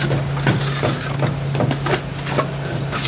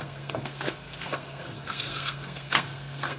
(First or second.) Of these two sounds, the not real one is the second